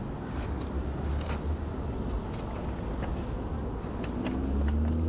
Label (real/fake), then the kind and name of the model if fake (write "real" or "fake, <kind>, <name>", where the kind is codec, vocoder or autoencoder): real